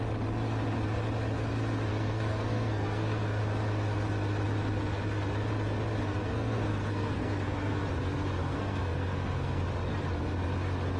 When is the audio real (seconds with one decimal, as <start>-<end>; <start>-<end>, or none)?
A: 0.0-1.9; 3.4-6.0; 7.8-8.4; 9.6-11.0